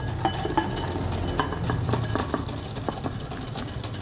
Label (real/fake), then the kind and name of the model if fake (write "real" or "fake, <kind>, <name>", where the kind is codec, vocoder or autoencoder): real